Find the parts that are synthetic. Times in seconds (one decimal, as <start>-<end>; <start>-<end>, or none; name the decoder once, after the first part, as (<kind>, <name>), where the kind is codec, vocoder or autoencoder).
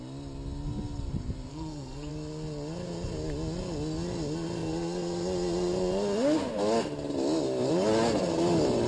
1.5-2.1 (codec, SNAC)